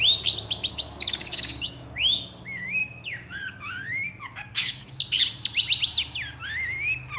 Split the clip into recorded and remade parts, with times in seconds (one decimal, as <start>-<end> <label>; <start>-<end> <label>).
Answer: 0.0-0.7 recorded; 0.7-5.0 remade; 5.0-7.2 recorded